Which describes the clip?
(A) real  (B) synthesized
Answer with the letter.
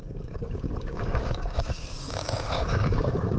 B